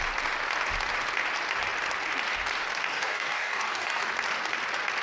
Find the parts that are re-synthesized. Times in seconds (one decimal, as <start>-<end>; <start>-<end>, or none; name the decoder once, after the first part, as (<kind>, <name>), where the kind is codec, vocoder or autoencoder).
2.9-4.0 (codec, DAC)